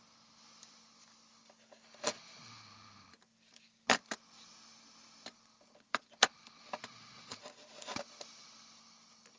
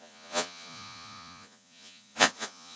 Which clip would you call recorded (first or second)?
first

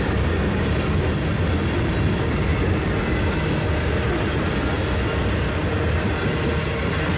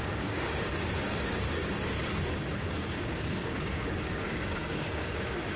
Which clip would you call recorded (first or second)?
first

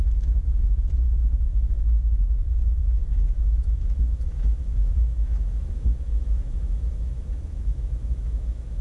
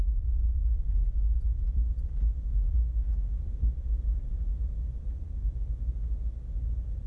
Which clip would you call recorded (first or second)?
second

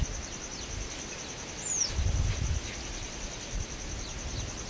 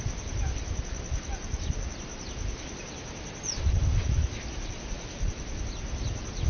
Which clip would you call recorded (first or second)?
first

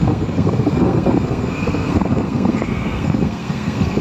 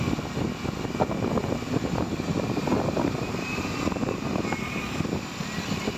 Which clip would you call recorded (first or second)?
second